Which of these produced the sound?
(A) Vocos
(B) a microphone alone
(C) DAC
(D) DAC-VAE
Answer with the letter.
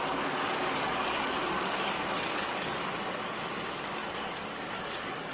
C